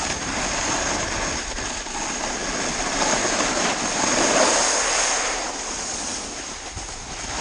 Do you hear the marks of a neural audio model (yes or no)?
no